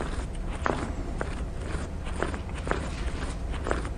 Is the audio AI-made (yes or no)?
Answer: no